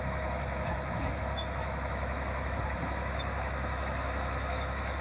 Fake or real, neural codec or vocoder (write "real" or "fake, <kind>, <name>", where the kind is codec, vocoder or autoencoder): fake, autoencoder, DAC-VAE